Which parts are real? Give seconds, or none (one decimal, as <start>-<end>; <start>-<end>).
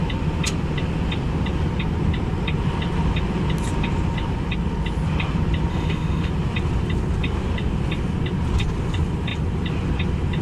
0.0-5.7; 6.3-10.4